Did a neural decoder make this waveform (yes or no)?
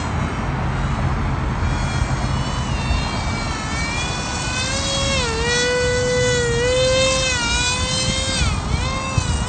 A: no